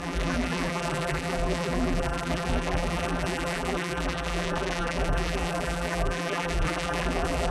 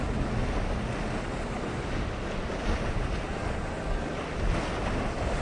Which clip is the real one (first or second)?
second